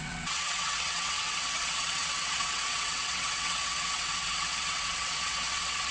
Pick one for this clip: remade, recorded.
remade